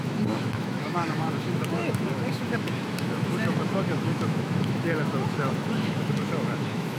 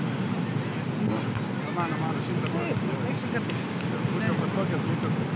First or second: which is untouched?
second